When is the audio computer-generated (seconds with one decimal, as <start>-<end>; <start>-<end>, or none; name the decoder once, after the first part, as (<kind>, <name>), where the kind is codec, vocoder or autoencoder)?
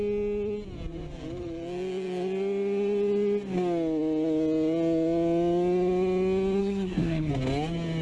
6.6-7.3 (codec, SNAC)